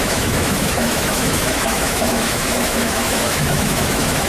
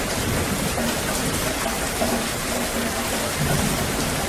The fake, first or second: first